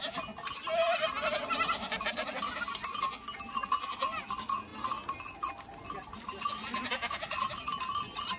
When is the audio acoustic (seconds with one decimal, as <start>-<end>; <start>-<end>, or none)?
0.0-8.4